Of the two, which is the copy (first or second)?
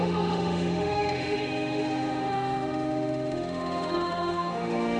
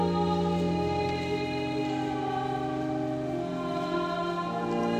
first